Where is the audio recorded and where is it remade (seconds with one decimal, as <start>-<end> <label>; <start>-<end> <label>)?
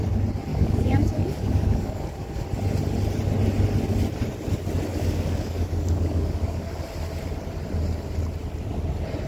0.0-0.5 recorded; 0.5-2.4 remade; 2.4-4.9 recorded; 4.9-6.7 remade; 6.7-9.3 recorded